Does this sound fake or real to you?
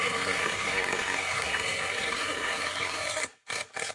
fake